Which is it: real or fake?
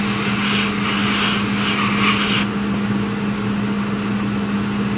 real